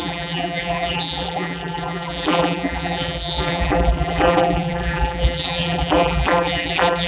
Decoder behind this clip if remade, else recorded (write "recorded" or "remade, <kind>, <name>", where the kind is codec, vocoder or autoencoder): remade, vocoder, BigVGAN v2